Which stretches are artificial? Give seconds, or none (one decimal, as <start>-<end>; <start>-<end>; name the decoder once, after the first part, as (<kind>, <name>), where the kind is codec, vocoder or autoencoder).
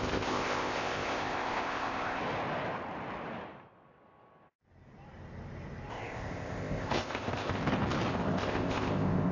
0.0-2.2 (codec, ZipCodec); 5.9-7.6; 8.1-9.3